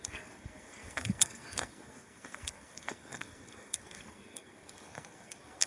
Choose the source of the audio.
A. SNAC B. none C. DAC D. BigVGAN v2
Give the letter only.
A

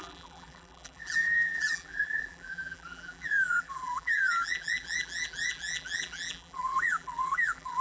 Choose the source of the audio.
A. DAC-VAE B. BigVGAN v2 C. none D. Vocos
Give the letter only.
B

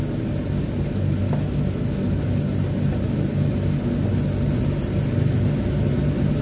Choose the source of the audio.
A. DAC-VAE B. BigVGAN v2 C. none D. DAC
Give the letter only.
C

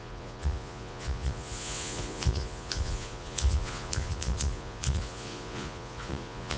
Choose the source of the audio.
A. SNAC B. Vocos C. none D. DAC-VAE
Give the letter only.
B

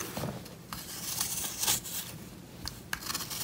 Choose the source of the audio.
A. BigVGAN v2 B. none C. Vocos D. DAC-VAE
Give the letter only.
B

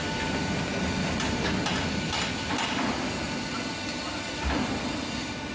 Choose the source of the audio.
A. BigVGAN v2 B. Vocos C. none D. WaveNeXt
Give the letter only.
C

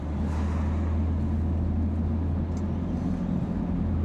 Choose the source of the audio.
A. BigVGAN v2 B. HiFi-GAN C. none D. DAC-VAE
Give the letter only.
C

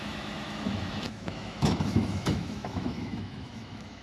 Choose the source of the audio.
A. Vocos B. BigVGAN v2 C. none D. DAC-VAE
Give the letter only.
D